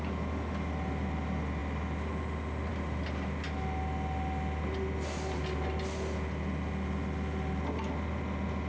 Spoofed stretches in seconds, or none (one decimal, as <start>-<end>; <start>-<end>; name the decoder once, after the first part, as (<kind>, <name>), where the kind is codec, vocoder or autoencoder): none